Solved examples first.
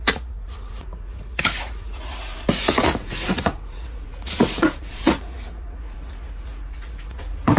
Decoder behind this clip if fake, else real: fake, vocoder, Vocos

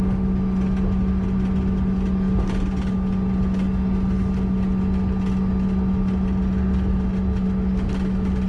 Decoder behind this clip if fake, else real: real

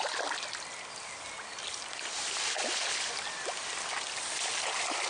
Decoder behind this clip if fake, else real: real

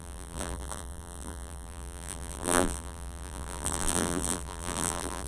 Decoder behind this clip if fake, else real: fake, vocoder, BigVGAN v2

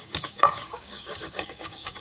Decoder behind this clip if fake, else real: fake, codec, DAC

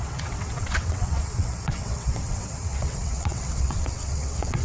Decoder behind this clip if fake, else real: fake, vocoder, WaveNeXt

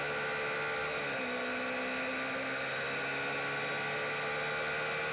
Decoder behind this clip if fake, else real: real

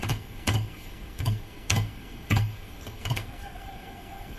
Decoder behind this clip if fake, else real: fake, codec, SNAC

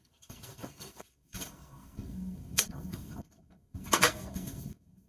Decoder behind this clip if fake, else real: fake, codec, SNAC